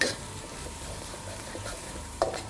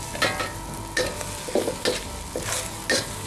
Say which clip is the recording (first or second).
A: second